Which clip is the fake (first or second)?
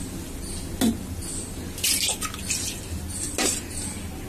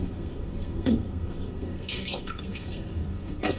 second